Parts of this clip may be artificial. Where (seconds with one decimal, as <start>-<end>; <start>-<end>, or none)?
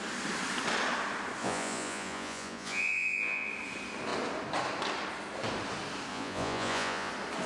1.4-3.5; 6.1-7.1